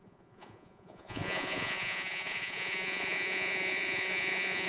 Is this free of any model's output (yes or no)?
no